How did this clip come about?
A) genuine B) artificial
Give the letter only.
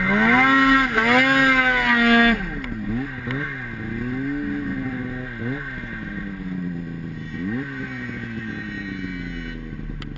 A